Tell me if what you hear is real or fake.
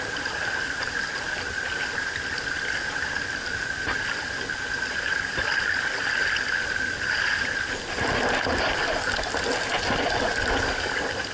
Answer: real